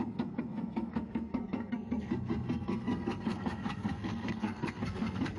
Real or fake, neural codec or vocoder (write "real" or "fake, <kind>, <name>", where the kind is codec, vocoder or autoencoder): fake, codec, SNAC